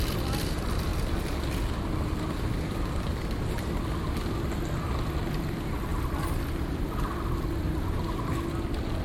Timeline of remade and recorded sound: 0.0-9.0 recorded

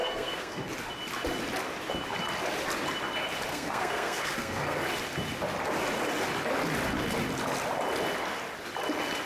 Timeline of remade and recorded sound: 0.0-0.6 remade; 0.6-3.5 recorded; 3.5-4.8 remade; 4.8-9.3 recorded

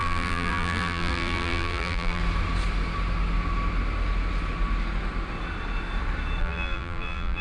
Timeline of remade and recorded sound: 0.0-2.2 remade; 2.2-6.4 recorded; 6.4-7.4 remade